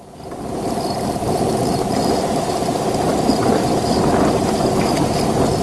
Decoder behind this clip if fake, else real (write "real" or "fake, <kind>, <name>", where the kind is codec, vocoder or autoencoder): real